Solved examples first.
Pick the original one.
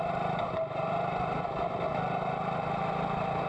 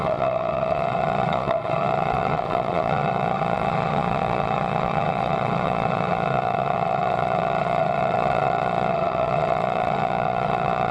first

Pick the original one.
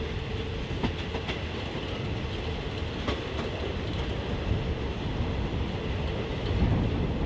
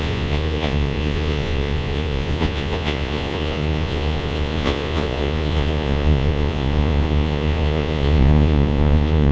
first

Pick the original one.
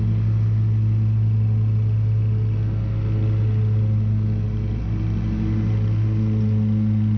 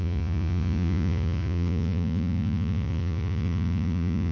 first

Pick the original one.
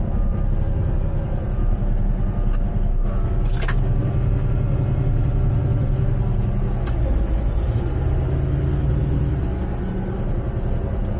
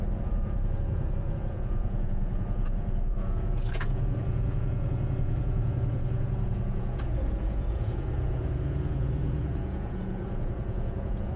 first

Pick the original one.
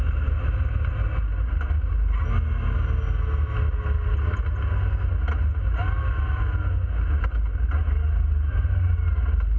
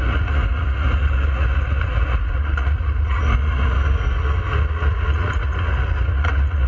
first